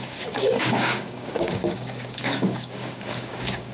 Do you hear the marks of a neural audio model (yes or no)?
yes